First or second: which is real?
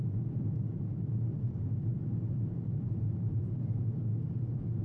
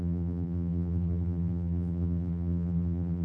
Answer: first